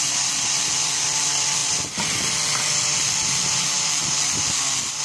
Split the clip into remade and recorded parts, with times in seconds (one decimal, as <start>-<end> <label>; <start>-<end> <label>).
0.0-5.0 recorded